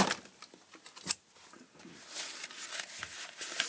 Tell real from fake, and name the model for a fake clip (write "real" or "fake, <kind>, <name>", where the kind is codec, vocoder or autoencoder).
real